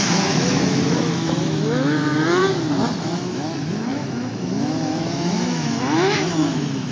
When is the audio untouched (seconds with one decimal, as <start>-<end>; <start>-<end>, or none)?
2.4-3.0